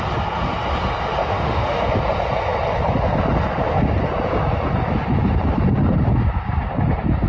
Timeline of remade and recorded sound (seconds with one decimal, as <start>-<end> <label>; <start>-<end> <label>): 0.0-1.2 recorded; 1.2-1.8 remade; 1.8-7.3 recorded